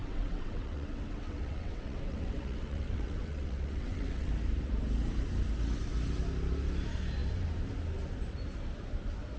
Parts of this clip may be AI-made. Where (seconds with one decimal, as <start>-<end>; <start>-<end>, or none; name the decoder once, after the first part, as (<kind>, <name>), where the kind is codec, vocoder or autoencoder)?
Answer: 0.0-4.3 (vocoder, WaveNeXt)